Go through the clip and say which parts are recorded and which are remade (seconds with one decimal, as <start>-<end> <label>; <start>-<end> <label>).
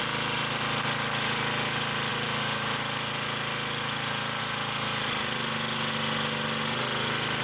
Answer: 0.0-7.4 recorded